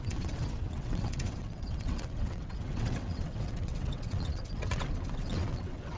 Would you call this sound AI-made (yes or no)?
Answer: yes